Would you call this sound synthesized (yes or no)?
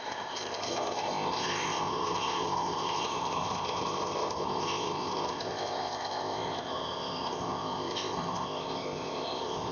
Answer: yes